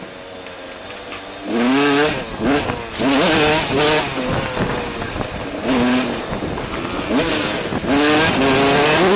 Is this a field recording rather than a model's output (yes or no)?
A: yes